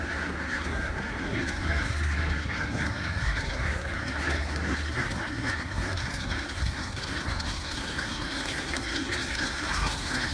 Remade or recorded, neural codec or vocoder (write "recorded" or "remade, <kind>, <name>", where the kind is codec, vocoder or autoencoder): remade, codec, SNAC